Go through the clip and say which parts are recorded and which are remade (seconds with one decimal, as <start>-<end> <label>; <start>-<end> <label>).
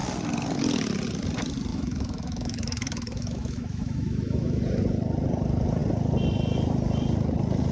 0.0-1.7 recorded; 1.7-4.6 remade; 4.6-7.7 recorded